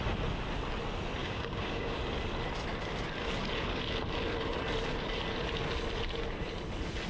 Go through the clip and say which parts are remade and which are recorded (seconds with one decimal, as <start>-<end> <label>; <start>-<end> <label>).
0.0-1.2 recorded; 1.2-2.0 remade; 2.0-7.1 recorded